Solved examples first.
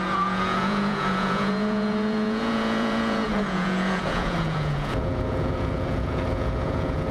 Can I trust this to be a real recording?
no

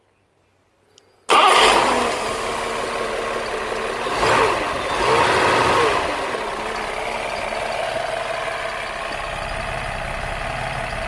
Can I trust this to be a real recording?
yes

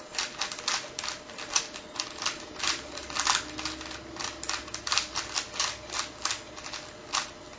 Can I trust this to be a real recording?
yes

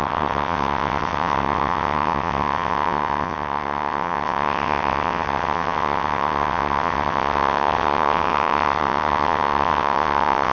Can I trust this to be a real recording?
no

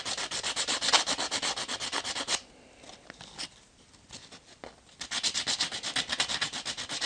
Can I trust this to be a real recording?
yes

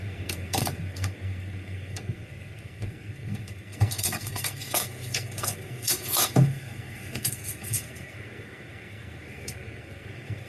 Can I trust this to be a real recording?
no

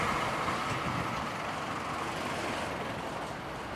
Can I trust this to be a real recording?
yes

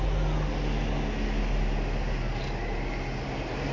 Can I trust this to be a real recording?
yes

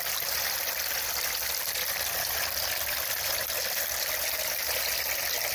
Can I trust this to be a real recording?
yes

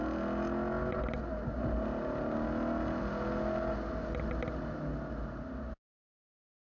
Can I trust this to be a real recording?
yes